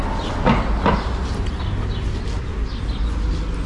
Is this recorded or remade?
recorded